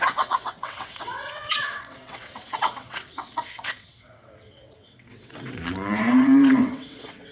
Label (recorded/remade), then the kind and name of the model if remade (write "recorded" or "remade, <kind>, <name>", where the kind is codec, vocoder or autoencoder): remade, vocoder, WaveNeXt